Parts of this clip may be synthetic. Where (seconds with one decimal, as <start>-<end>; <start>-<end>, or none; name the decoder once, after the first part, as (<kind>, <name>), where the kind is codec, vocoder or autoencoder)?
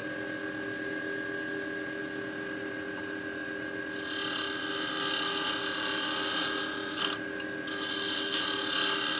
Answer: none